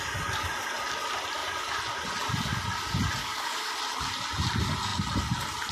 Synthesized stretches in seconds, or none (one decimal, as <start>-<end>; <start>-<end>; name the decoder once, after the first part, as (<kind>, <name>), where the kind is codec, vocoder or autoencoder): 3.2-3.7 (codec, DAC)